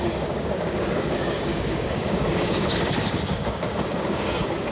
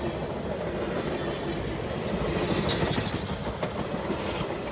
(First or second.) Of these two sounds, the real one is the second